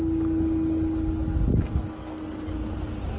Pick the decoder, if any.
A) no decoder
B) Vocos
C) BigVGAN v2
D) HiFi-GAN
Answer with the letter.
A